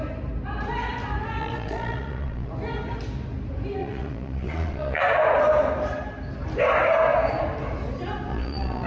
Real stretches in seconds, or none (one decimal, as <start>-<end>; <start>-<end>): 0.0-1.4; 2.5-3.8; 5.0-8.3